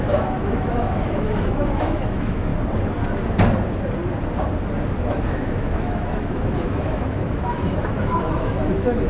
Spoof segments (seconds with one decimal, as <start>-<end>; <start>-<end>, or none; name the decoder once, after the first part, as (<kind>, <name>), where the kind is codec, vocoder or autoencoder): 0.0-2.5 (autoencoder, DAC-VAE); 5.1-9.1